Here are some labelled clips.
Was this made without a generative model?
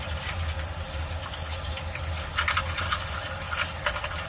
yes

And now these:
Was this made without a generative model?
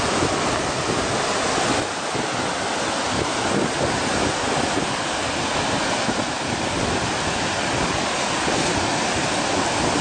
yes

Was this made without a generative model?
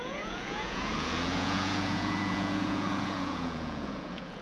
no